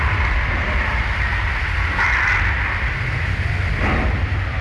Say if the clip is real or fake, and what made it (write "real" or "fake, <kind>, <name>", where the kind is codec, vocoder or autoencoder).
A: real